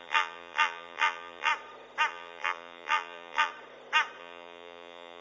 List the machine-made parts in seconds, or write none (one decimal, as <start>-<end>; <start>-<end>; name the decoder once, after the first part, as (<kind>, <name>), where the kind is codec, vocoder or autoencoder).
0.0-1.5 (vocoder, BigVGAN v2); 2.1-3.5; 4.2-5.2